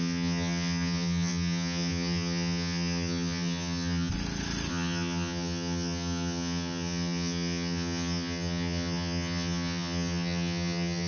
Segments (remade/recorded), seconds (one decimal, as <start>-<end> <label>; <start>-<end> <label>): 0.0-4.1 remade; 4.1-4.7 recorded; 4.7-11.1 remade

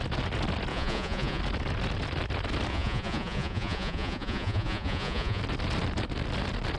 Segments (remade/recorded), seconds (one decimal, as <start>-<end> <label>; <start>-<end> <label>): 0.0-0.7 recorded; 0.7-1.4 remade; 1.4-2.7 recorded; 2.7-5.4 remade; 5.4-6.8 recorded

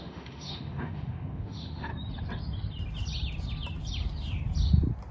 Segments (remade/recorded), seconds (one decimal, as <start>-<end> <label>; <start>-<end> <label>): 0.0-1.9 remade; 1.9-5.1 recorded

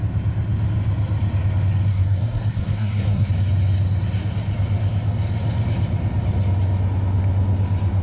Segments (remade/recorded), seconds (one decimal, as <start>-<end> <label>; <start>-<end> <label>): 0.0-1.9 recorded; 1.9-3.3 remade; 3.3-8.0 recorded

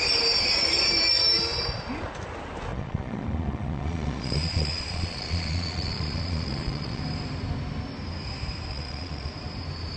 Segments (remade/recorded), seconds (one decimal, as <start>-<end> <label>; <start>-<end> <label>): 0.0-2.7 recorded; 2.7-7.0 remade; 7.0-8.7 recorded; 8.7-9.3 remade; 9.3-10.0 recorded

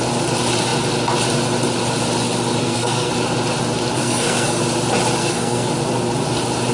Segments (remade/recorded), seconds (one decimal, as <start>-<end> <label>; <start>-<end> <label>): 0.0-2.6 recorded; 2.6-3.1 remade; 3.1-4.0 recorded; 4.0-4.6 remade; 4.6-5.2 recorded; 5.2-5.7 remade; 5.7-6.7 recorded

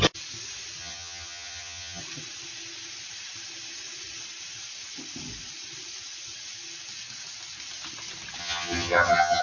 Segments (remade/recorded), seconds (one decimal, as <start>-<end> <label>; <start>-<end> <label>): 0.0-0.8 recorded; 0.8-2.0 remade; 2.0-8.4 recorded; 8.4-9.4 remade

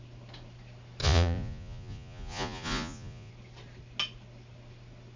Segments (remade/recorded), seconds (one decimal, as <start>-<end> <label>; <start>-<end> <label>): 0.0-1.0 recorded; 1.0-3.3 remade; 3.3-5.2 recorded